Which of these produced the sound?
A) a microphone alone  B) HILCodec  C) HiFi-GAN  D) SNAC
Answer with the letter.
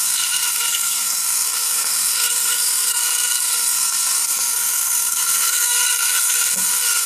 D